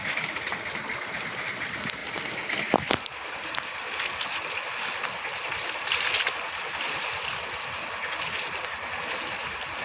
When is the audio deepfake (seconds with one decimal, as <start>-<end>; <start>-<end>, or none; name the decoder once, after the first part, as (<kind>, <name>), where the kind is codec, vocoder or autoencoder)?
none